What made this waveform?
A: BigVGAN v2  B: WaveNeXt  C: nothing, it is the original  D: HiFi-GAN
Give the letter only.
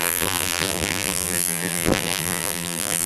A